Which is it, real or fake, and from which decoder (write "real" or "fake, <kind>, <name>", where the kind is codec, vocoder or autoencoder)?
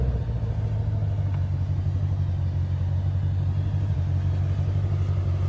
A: real